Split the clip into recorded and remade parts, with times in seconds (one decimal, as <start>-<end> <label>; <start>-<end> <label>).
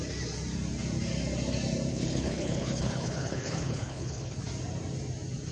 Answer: 0.0-1.9 recorded; 1.9-4.4 remade; 4.4-5.5 recorded